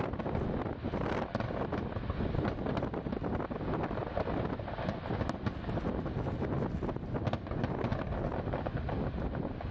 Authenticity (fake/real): real